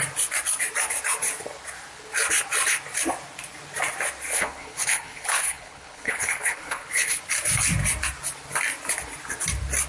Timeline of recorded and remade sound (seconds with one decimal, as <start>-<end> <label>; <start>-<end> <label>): 0.0-4.3 recorded; 4.3-7.2 remade; 7.2-9.9 recorded

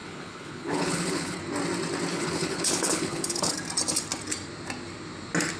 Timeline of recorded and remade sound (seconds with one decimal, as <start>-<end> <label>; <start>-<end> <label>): 0.0-1.4 remade; 1.4-2.1 recorded; 2.1-3.5 remade; 3.5-5.6 recorded

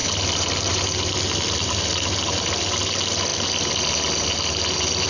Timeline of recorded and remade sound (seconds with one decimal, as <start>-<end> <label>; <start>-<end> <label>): 0.0-5.1 recorded